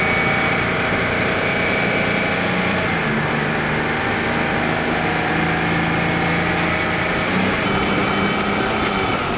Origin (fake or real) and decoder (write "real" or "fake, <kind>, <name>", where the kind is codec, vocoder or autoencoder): real